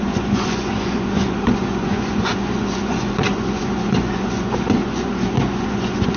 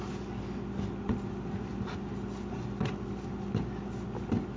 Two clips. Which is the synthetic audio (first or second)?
first